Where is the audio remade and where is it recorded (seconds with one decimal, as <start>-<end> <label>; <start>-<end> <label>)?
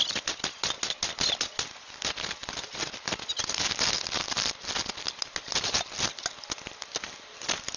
0.0-7.8 recorded